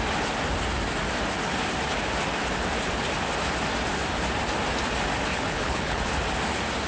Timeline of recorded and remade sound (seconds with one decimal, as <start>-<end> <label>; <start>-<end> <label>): 0.0-5.3 recorded; 5.3-6.1 remade; 6.1-6.9 recorded